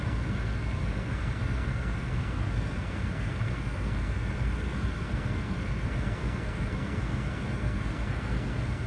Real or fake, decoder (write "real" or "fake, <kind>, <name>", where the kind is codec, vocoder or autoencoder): fake, codec, SNAC